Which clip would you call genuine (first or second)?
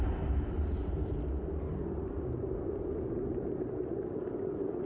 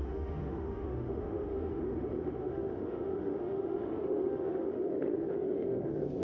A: first